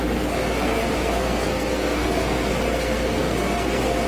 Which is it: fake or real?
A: fake